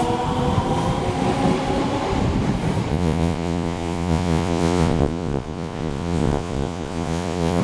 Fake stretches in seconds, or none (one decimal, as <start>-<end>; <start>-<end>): 2.9-7.6